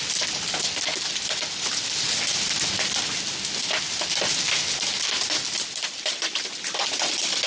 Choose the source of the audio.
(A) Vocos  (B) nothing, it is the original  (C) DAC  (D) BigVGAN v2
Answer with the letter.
B